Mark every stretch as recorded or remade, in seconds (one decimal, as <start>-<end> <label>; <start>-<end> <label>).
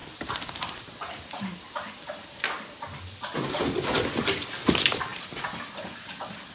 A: 0.0-6.5 recorded